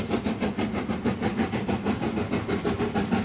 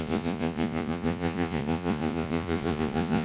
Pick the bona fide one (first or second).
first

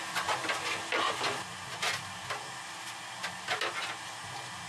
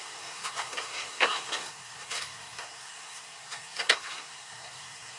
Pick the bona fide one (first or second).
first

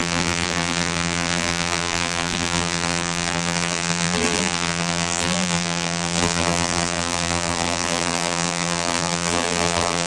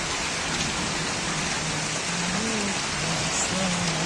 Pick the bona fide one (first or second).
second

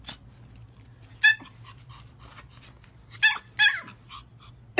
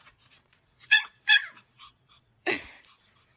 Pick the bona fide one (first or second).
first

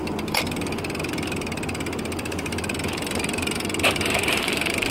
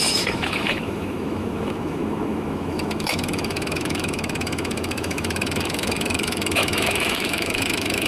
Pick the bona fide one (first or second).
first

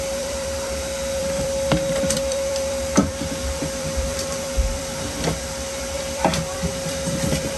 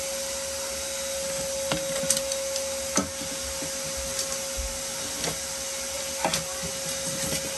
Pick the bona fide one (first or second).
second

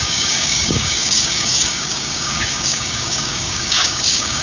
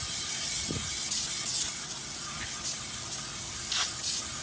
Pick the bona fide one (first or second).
second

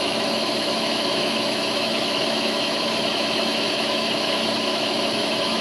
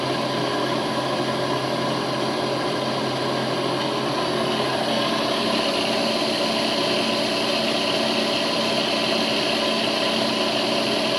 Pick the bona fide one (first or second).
second